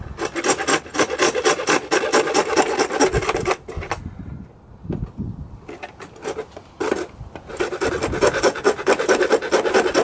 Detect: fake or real real